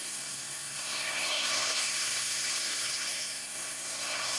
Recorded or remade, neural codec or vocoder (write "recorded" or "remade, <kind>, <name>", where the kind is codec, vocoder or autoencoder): remade, codec, SNAC